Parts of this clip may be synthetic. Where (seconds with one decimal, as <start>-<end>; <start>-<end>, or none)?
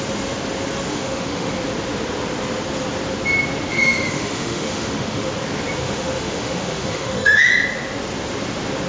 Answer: 0.9-1.5; 3.7-5.3; 5.8-7.5